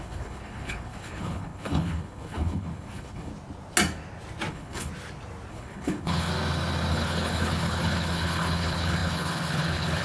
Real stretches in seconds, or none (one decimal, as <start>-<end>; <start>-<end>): 3.3-4.5; 4.9-5.5; 6.3-6.9